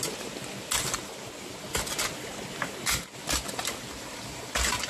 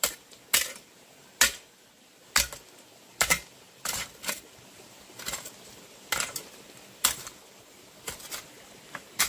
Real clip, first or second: first